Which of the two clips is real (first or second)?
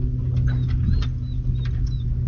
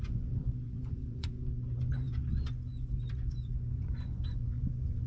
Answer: first